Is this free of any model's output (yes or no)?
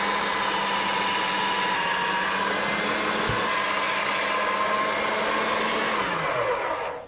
yes